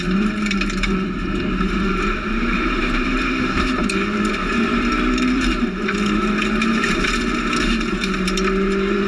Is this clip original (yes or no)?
no